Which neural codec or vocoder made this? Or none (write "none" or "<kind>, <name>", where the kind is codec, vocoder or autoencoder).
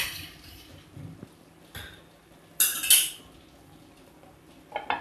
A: none